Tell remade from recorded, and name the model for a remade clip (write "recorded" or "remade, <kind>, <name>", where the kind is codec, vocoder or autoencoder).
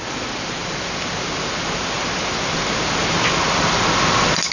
recorded